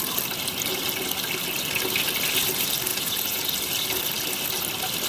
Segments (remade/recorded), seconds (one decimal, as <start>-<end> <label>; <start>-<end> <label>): 0.0-2.9 recorded; 2.9-3.5 remade; 3.5-5.1 recorded